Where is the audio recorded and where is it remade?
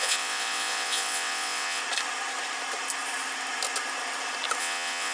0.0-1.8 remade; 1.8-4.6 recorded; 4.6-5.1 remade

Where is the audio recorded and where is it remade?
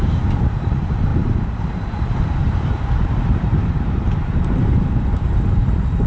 0.0-6.1 remade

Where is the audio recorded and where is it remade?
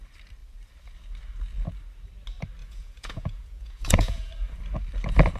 0.0-2.6 recorded; 2.6-4.3 remade; 4.3-5.4 recorded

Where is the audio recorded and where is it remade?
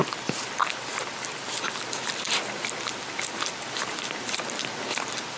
0.0-5.4 recorded